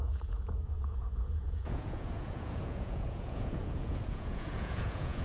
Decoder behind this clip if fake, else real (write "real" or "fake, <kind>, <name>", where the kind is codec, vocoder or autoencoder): fake, vocoder, Vocos